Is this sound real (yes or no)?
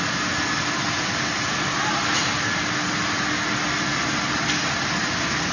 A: yes